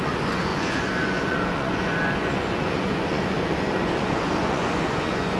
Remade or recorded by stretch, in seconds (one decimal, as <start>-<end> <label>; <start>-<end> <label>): 0.0-5.4 remade